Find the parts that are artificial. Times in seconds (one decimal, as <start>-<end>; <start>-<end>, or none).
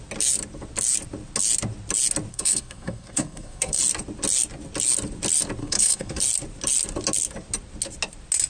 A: 2.3-3.8; 5.6-6.2